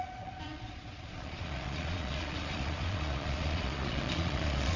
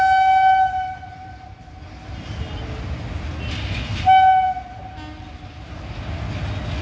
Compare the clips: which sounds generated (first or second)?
first